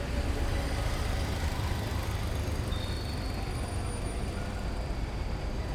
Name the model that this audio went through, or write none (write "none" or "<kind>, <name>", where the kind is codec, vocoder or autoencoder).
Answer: none